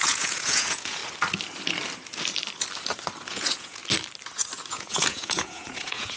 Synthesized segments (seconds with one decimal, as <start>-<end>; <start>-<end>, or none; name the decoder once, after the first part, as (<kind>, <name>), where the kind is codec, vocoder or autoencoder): 0.0-1.0 (vocoder, Vocos); 3.3-3.8; 4.7-6.2

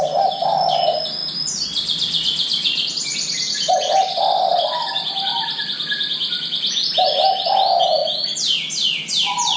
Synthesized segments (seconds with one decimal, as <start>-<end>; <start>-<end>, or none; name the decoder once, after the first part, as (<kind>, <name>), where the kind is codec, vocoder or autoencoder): none

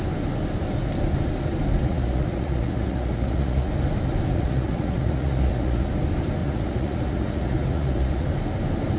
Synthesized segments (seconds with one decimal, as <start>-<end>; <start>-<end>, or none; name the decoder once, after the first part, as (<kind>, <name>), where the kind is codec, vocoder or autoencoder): 1.8-3.7 (vocoder, Vocos); 4.3-5.9; 6.4-8.3